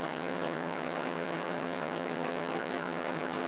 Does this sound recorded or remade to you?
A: remade